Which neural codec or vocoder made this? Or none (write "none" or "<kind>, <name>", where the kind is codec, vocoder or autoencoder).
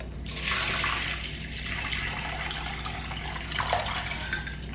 none